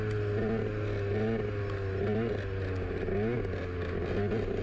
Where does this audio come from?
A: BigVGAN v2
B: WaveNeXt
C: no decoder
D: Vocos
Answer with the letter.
C